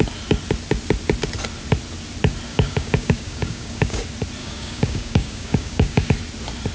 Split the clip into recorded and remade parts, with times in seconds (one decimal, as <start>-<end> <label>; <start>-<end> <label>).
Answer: 0.0-2.5 recorded; 2.5-4.0 remade; 4.0-4.4 recorded; 4.4-6.1 remade; 6.1-6.7 recorded